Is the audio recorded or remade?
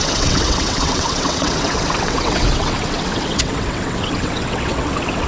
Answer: remade